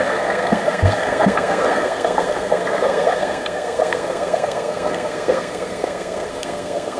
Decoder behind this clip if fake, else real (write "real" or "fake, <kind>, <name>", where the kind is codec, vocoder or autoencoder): fake, codec, SNAC